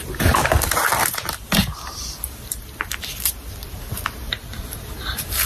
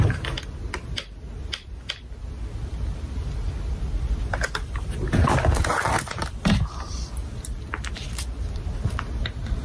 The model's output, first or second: first